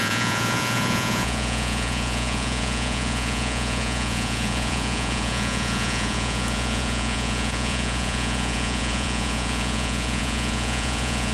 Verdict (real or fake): fake